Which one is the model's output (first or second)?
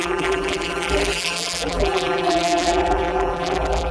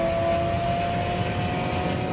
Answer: first